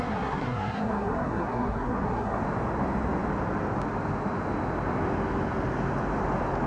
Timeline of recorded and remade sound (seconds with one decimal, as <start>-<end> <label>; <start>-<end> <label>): 0.0-2.4 remade; 2.4-6.7 recorded